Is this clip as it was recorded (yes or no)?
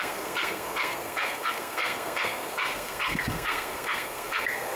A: no